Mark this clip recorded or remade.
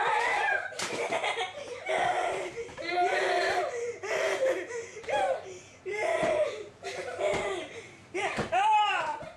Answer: remade